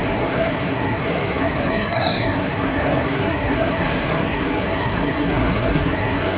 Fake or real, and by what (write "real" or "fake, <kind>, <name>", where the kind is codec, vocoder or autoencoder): fake, codec, SNAC